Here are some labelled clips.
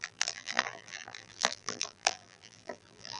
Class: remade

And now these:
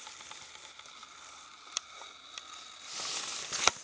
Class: recorded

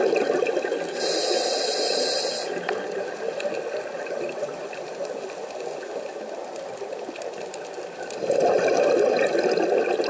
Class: recorded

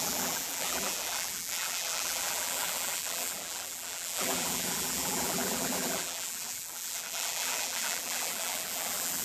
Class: remade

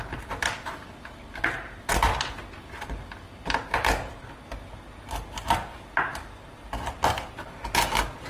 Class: recorded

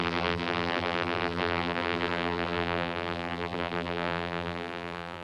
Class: remade